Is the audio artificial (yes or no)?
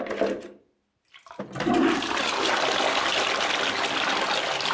no